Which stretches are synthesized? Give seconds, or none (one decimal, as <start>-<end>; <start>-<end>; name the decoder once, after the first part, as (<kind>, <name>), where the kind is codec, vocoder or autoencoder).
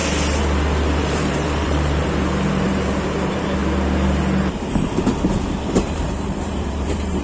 1.0-3.6 (vocoder, BigVGAN v2); 5.7-7.2